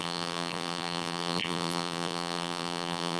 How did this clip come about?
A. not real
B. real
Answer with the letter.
A